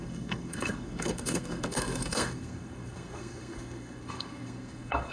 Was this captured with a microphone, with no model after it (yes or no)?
no